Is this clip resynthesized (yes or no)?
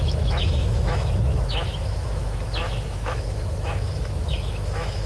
yes